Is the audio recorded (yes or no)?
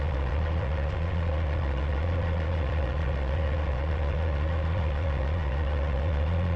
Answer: no